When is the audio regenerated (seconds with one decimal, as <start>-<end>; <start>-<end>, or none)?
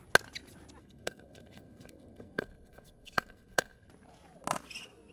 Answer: 0.8-3.9